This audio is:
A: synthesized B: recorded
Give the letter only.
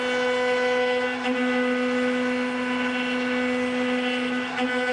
B